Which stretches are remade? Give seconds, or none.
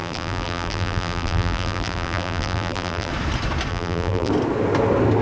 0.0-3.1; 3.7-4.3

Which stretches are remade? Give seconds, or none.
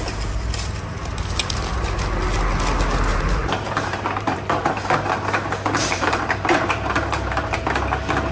3.1-7.6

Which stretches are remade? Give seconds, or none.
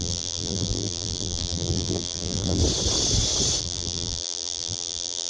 0.0-2.6; 3.6-5.3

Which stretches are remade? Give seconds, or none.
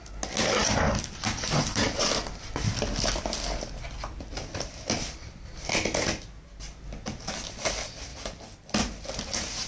0.6-5.5